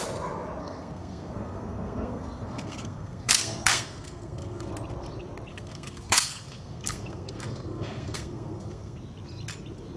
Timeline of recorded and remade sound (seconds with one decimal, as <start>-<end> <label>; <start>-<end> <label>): 0.0-0.6 recorded; 0.6-4.7 remade; 4.7-5.5 recorded; 5.5-9.0 remade; 9.0-10.0 recorded